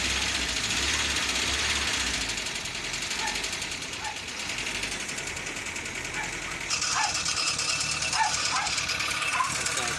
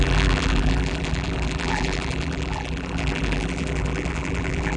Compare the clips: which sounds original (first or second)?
first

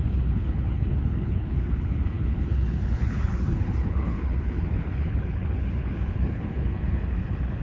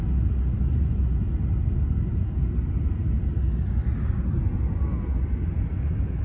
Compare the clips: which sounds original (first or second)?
second